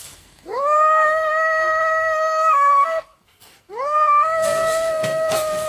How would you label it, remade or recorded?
remade